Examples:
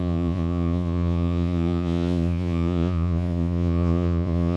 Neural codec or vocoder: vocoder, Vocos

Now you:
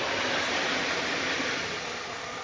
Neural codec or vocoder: none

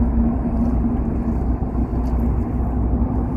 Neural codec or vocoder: none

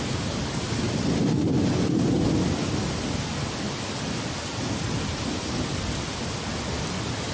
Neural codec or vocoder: vocoder, BigVGAN v2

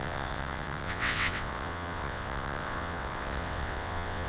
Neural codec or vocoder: vocoder, WaveNeXt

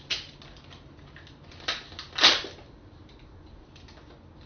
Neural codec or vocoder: none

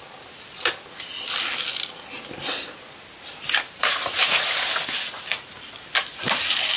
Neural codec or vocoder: none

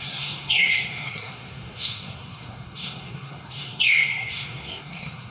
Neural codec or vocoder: codec, SNAC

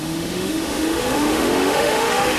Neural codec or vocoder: autoencoder, DAC-VAE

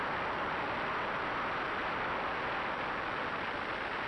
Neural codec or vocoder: none